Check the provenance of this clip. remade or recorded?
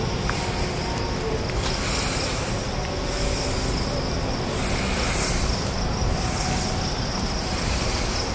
recorded